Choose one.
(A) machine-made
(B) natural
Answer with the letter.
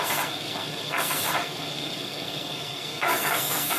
A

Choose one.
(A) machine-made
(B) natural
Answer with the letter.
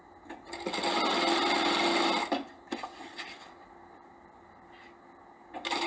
B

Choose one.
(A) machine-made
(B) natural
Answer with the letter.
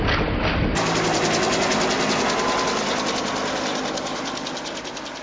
B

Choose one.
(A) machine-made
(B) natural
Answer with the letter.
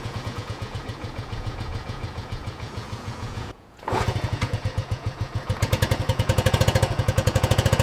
A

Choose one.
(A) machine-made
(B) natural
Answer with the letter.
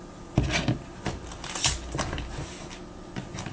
B